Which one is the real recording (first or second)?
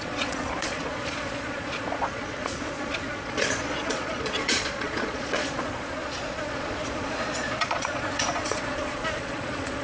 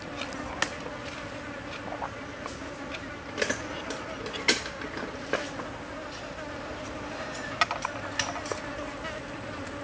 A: second